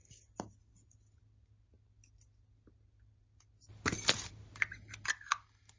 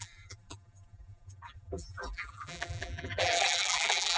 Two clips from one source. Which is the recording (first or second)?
first